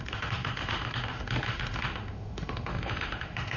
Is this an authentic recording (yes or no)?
no